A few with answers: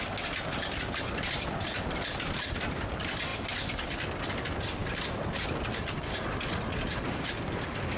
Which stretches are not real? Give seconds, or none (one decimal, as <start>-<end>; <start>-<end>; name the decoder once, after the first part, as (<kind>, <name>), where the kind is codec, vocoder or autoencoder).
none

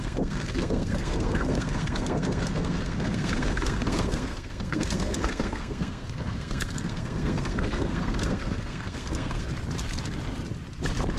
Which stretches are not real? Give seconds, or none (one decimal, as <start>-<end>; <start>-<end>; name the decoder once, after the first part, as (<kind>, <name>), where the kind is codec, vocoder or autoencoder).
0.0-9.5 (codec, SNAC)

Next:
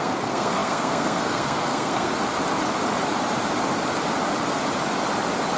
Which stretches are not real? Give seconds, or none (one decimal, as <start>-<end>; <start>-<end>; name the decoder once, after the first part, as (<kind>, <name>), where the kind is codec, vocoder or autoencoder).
0.0-2.1 (codec, SNAC)

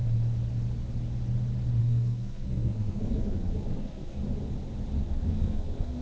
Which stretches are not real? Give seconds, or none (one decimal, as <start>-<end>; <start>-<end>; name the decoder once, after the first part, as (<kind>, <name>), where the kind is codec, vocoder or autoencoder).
1.8-4.2 (codec, SNAC); 5.0-6.0